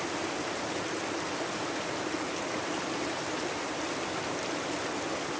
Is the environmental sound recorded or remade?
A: recorded